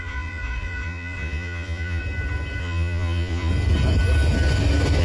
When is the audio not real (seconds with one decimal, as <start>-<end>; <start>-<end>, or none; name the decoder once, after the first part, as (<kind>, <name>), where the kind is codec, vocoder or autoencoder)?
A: 0.0-2.0 (vocoder, Vocos); 2.6-3.5